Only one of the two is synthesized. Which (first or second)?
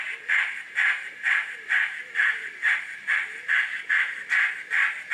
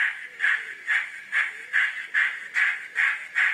first